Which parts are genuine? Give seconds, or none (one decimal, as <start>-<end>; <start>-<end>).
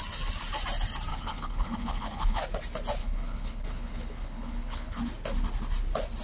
0.0-1.1; 2.4-3.0; 5.0-6.2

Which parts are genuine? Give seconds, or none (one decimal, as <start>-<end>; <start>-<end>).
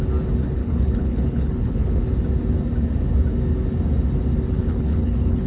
0.0-0.6; 2.0-4.6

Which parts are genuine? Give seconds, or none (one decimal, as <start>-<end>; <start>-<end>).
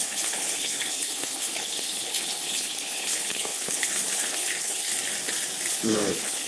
4.9-5.7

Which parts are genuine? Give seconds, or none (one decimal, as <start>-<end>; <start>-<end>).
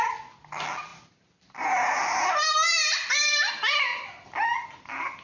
0.0-5.2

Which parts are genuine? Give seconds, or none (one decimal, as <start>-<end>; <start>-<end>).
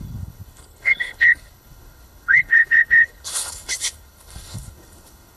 none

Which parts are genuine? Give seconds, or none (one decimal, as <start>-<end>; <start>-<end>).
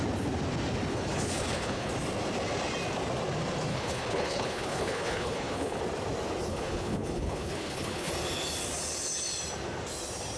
0.0-0.9; 1.9-3.7; 5.8-6.5; 8.1-10.4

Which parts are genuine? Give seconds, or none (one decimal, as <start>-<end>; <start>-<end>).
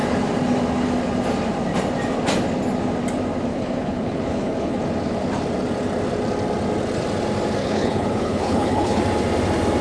0.0-3.5; 4.8-7.6; 9.0-9.8